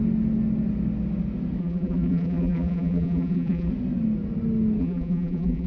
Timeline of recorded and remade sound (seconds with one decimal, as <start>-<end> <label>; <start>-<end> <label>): 0.0-1.6 recorded; 1.6-3.7 remade; 3.7-4.8 recorded; 4.8-5.7 remade